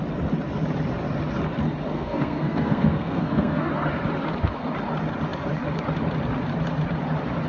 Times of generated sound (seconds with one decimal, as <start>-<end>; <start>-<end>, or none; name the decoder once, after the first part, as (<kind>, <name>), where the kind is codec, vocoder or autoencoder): 1.9-3.7 (codec, SNAC)